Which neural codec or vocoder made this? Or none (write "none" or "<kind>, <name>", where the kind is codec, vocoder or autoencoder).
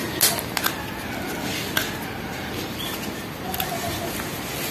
none